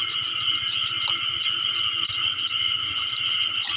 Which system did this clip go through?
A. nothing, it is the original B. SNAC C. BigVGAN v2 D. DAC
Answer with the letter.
A